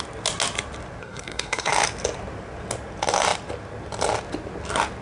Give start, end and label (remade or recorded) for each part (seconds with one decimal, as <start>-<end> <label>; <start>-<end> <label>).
0.0-1.0 recorded; 1.0-1.7 remade; 1.7-5.0 recorded

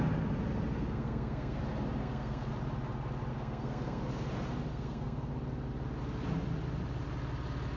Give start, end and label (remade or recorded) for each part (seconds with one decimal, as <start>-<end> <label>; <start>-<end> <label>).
0.0-0.7 recorded; 0.7-1.6 remade; 1.6-2.0 recorded; 2.0-2.5 remade; 2.5-3.3 recorded; 3.3-4.1 remade; 4.1-4.7 recorded; 4.7-5.3 remade; 5.3-7.8 recorded

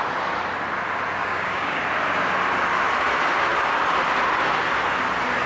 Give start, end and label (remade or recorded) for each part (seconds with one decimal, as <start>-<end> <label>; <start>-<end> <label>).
0.0-1.2 recorded; 1.2-1.8 remade; 1.8-5.5 recorded

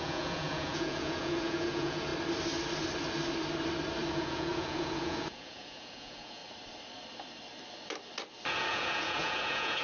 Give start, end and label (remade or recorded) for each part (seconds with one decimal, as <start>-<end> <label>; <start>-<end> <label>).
0.0-2.1 remade; 2.1-4.1 recorded; 4.1-6.4 remade; 6.4-8.5 recorded; 8.5-9.8 remade

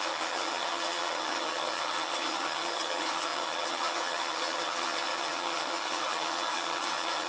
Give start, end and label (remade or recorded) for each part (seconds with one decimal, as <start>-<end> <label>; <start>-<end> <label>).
0.0-7.3 remade

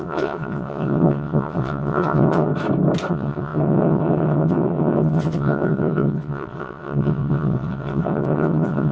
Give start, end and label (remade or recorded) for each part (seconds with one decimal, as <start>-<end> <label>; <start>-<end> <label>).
0.0-2.5 remade; 2.5-3.1 recorded; 3.1-8.9 remade